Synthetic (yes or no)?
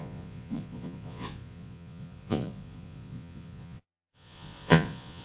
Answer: yes